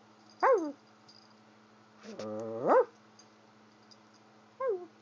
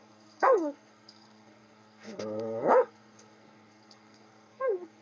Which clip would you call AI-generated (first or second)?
second